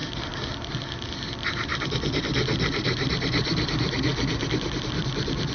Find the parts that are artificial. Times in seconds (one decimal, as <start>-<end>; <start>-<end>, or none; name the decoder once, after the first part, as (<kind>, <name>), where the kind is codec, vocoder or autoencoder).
none